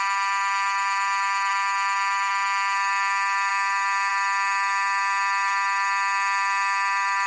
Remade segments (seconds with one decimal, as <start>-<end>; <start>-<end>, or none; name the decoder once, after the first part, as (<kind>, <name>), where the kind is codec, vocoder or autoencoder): 0.0-7.3 (autoencoder, DAC-VAE)